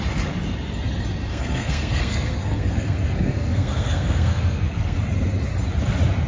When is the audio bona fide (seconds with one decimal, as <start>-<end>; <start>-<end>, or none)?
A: 0.0-1.3; 5.0-6.3